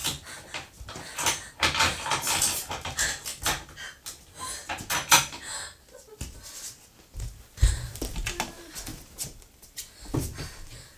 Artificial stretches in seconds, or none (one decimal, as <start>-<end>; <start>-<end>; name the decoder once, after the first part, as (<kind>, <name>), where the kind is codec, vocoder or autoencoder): 8.9-9.8 (vocoder, BigVGAN v2)

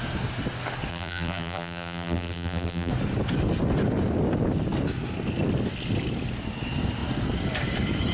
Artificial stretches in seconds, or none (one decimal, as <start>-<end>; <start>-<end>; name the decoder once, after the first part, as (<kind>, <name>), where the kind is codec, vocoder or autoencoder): 0.9-2.9 (vocoder, BigVGAN v2)

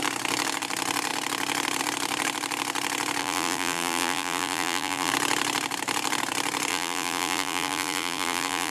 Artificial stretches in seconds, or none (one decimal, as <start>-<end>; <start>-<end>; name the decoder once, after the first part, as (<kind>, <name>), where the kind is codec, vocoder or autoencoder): 3.2-5.1 (vocoder, BigVGAN v2); 6.7-8.7

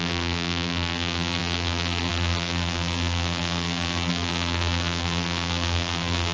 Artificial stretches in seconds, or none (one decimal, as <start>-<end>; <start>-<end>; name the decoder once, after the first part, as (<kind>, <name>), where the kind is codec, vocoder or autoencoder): 0.0-6.3 (vocoder, BigVGAN v2)

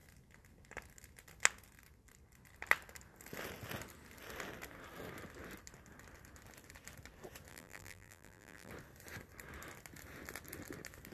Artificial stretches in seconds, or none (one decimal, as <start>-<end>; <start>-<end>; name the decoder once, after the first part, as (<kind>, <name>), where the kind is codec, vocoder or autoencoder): 7.5-8.7 (vocoder, BigVGAN v2)

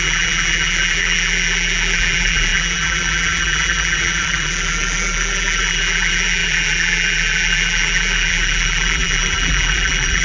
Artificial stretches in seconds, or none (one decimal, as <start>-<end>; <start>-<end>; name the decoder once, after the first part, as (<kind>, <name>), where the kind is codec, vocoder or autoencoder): 0.0-10.2 (vocoder, BigVGAN v2)

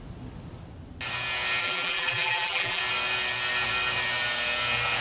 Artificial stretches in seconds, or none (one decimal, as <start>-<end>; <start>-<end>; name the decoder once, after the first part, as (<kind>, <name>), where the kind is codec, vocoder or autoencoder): 1.6-2.8 (vocoder, BigVGAN v2)

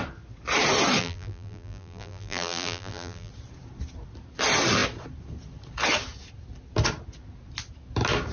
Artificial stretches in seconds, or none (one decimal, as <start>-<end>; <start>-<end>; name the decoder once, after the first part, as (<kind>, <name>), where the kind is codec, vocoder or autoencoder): 1.0-3.3 (vocoder, BigVGAN v2)